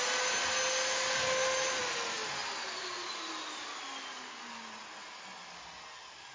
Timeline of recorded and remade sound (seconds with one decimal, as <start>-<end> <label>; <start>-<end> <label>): 0.0-1.8 recorded; 1.8-3.3 remade; 3.3-6.3 recorded